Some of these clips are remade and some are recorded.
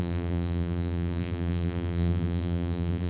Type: remade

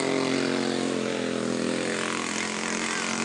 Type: remade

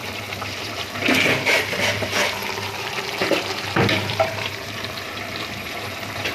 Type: remade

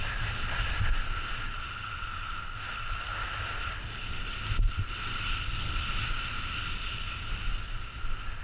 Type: recorded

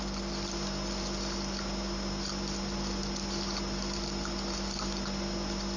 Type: recorded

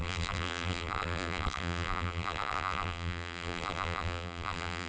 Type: remade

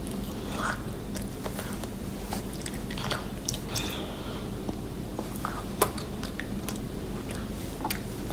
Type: recorded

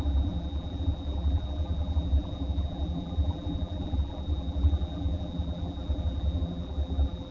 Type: remade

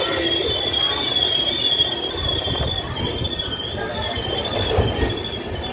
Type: recorded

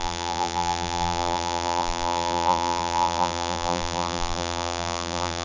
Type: remade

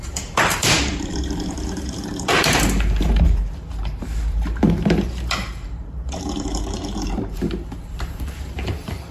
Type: remade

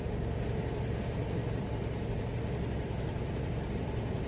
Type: remade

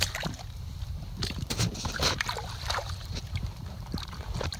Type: remade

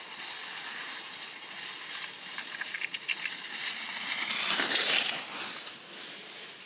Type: recorded